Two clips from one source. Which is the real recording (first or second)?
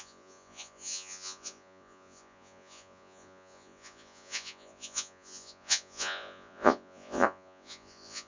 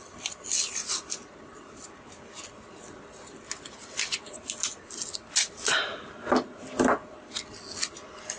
second